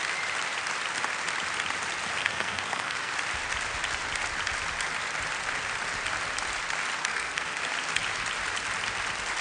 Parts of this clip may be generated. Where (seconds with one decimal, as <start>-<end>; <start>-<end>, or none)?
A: 2.2-3.1; 7.0-7.6